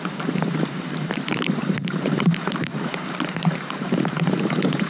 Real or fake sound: fake